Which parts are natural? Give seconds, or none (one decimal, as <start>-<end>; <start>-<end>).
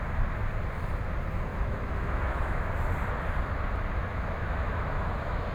0.0-1.5; 2.7-4.1